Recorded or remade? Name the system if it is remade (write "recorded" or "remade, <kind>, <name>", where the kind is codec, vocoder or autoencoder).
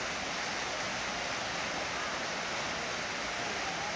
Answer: recorded